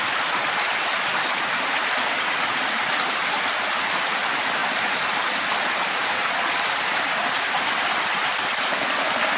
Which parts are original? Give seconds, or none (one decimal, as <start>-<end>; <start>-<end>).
0.0-9.4